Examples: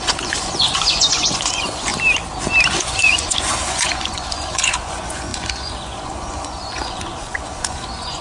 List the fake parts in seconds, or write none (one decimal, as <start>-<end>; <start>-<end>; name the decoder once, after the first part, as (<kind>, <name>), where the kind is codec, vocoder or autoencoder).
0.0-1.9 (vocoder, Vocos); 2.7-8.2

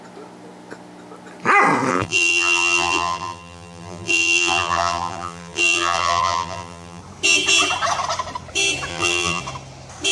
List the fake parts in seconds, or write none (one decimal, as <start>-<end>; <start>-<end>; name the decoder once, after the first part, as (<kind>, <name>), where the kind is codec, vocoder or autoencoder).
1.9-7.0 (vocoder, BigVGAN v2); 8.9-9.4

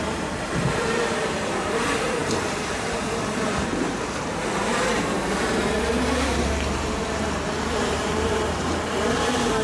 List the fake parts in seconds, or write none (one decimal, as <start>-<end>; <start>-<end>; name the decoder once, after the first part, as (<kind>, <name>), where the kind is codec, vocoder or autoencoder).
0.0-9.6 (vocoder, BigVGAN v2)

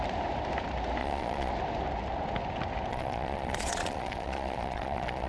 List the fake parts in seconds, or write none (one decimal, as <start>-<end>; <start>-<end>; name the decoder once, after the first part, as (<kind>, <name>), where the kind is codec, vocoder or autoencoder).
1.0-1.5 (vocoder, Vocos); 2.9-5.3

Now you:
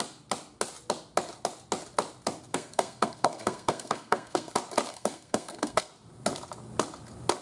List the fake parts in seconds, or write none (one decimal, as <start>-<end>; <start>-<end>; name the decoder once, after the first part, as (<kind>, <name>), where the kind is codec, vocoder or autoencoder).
2.5-4.5 (codec, SNAC); 4.9-5.9

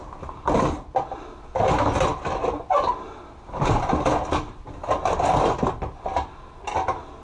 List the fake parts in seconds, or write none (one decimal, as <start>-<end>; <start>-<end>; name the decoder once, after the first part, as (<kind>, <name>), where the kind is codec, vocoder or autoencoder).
none